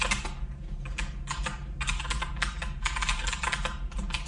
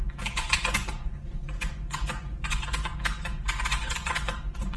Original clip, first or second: first